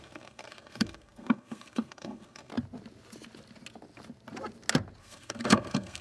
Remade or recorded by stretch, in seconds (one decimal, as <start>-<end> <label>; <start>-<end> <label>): 0.0-2.5 remade; 2.5-5.0 recorded; 5.0-6.0 remade